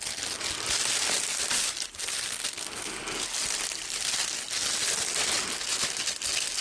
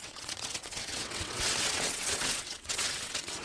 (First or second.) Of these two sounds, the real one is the first